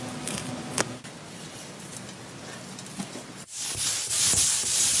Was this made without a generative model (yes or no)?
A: yes